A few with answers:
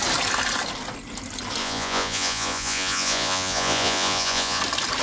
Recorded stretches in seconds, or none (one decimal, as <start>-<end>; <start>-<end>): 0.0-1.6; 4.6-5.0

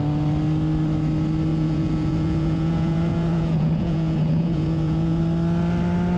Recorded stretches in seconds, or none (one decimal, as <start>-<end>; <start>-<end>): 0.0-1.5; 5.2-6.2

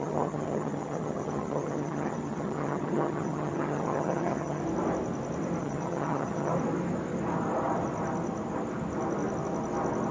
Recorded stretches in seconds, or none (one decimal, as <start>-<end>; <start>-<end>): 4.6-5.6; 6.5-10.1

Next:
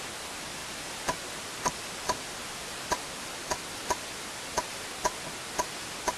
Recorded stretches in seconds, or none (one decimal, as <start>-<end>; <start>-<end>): 0.0-0.6; 4.3-6.2

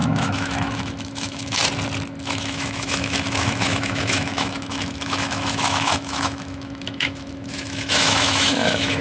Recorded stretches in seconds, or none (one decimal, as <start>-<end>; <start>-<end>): 1.6-2.2